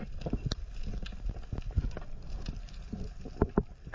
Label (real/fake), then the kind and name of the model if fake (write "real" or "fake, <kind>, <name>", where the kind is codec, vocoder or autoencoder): real